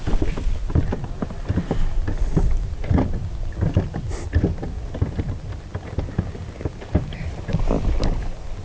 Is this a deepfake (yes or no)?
no